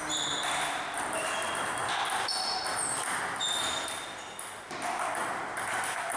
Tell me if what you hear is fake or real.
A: real